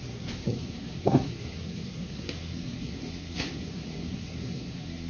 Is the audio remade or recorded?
remade